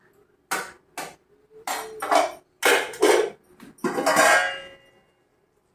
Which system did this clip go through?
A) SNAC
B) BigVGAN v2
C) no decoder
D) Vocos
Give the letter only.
C